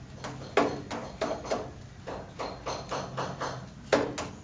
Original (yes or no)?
yes